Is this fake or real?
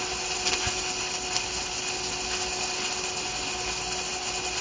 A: real